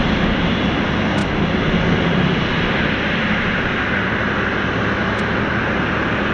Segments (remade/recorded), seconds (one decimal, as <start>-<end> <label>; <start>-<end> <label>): 0.0-6.3 recorded

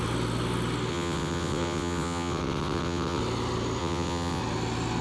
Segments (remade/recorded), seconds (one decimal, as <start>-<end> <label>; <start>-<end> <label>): 0.0-0.9 recorded; 0.9-3.2 remade; 3.2-3.8 recorded; 3.8-4.4 remade; 4.4-5.0 recorded

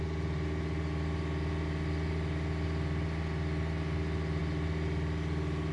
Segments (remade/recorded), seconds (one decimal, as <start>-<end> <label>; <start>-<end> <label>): 0.0-5.7 recorded

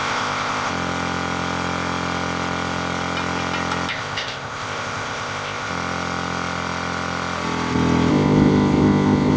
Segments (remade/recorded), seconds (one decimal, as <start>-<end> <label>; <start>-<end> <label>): 0.0-0.7 remade; 0.7-3.9 recorded; 3.9-5.7 remade; 5.7-8.1 recorded; 8.1-9.4 remade

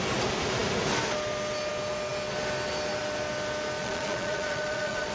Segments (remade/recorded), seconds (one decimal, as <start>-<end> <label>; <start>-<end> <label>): 0.0-3.8 recorded; 3.8-5.1 remade